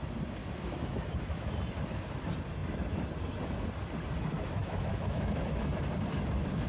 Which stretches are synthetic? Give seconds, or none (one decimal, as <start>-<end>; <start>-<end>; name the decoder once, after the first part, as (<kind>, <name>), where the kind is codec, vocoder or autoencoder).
0.4-1.5 (autoencoder, DAC-VAE); 4.6-5.4